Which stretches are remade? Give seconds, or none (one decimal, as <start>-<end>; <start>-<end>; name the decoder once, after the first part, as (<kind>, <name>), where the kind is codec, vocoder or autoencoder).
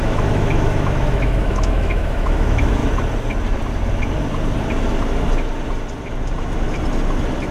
0.0-2.8 (autoencoder, DAC-VAE)